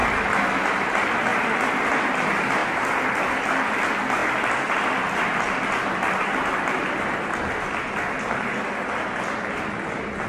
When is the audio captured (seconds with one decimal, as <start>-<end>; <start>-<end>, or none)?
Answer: 0.0-10.3